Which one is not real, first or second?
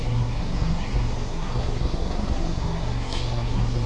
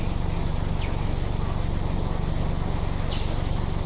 first